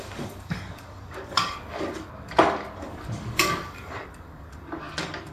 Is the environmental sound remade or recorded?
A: remade